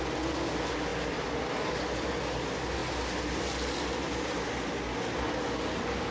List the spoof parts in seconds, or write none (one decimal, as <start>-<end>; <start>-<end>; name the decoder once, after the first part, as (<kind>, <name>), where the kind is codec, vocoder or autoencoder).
none